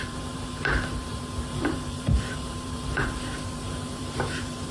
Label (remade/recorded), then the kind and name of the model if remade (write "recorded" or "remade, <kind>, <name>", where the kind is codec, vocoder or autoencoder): remade, vocoder, BigVGAN v2